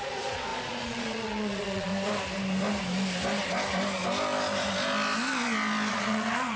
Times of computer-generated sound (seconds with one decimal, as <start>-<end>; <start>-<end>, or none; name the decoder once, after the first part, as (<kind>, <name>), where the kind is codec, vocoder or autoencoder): 0.0-1.9 (vocoder, Vocos); 5.9-6.6